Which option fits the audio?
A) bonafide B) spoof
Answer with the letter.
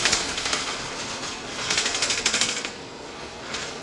B